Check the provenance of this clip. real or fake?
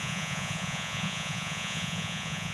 fake